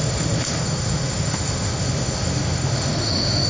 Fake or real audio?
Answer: fake